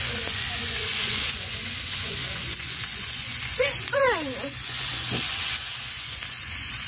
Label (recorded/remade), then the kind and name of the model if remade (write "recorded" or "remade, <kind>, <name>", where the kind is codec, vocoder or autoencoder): remade, vocoder, Vocos